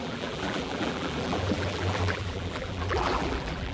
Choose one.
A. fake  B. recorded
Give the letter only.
A